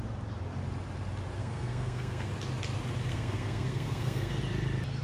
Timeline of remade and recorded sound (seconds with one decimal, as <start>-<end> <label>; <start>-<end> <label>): 0.0-1.4 recorded; 1.4-2.3 remade; 2.3-3.1 recorded; 3.1-4.4 remade; 4.4-5.0 recorded